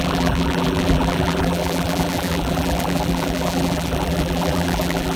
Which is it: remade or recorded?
remade